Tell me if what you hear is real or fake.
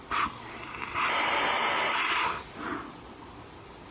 real